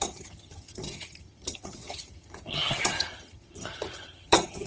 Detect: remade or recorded remade